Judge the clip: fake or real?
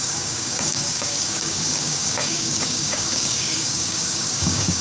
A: fake